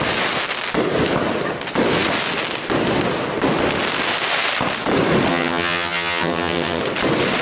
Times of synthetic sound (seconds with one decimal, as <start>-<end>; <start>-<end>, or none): 5.3-6.8